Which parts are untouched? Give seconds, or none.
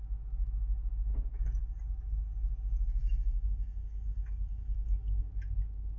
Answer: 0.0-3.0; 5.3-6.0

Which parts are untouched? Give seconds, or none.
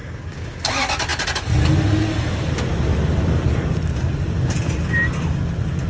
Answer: 0.7-5.9